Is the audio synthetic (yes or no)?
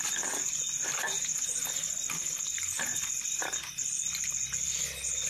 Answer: no